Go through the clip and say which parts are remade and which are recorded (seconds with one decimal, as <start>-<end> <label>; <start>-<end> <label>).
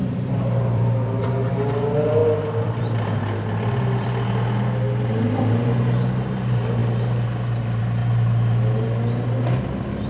0.0-1.5 remade; 1.5-10.1 recorded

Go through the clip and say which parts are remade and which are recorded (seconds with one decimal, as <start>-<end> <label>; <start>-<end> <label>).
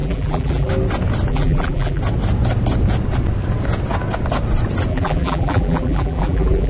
0.0-0.7 remade; 0.7-1.3 recorded; 1.3-2.0 remade; 2.0-4.9 recorded; 4.9-6.7 remade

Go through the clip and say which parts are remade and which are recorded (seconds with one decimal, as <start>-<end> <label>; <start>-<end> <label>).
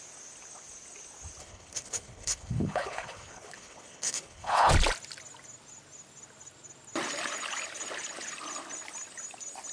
0.0-1.4 recorded; 1.4-4.7 remade; 4.7-9.7 recorded